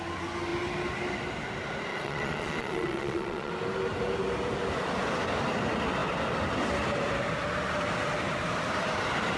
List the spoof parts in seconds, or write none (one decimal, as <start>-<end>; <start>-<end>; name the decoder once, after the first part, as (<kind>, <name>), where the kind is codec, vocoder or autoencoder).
1.9-3.5 (vocoder, Vocos)